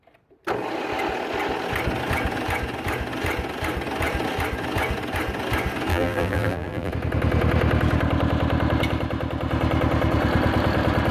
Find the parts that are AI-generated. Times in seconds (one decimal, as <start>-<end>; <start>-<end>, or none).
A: 5.9-6.9